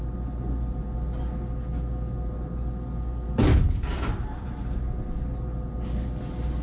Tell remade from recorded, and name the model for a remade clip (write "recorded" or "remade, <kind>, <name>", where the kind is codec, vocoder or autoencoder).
recorded